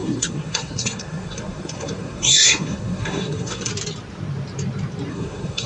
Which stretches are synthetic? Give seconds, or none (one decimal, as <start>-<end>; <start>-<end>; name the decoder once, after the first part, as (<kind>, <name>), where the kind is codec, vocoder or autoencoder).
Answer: 0.0-3.7 (codec, SNAC); 5.1-5.7